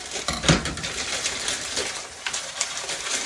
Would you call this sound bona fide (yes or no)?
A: no